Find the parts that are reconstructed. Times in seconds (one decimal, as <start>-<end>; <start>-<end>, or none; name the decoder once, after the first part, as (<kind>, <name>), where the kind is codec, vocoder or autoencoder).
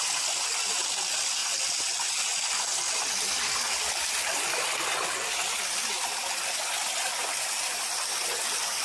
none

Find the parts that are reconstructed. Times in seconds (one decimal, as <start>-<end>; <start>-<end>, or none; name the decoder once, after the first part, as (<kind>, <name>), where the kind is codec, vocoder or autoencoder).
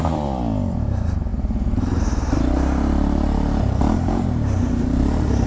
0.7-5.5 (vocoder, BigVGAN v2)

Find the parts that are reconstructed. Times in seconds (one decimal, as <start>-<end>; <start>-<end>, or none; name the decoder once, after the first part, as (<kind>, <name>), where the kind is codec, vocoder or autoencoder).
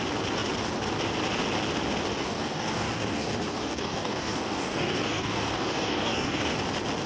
2.1-6.4 (codec, DAC)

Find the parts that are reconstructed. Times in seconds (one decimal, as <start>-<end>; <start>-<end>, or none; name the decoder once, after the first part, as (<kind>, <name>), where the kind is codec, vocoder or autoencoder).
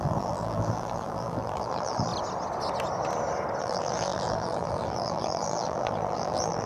0.0-2.1 (vocoder, BigVGAN v2); 3.6-6.7